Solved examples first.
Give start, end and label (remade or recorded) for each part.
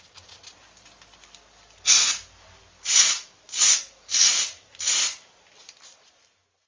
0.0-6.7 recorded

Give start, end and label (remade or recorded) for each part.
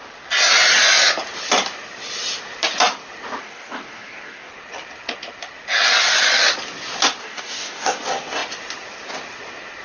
0.0-3.4 recorded; 3.4-4.5 remade; 4.5-7.2 recorded; 7.2-8.0 remade; 8.0-9.8 recorded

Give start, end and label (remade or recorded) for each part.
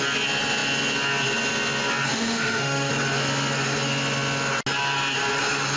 0.0-2.1 recorded; 2.1-2.9 remade; 2.9-5.8 recorded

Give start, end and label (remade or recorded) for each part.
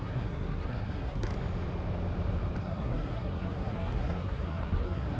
0.0-1.3 remade; 1.3-2.6 recorded; 2.6-5.2 remade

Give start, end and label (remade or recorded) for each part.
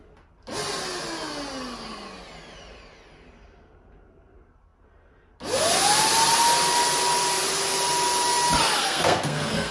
0.0-8.8 recorded; 8.8-9.7 remade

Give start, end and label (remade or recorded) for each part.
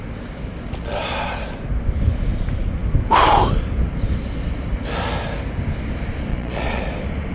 0.0-0.8 recorded; 0.8-1.4 remade; 1.4-6.3 recorded; 6.3-6.8 remade; 6.8-7.3 recorded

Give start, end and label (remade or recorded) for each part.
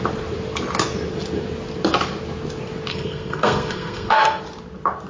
0.0-2.9 recorded; 2.9-4.4 remade; 4.4-5.1 recorded